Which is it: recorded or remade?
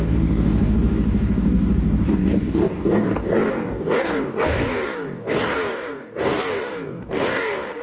remade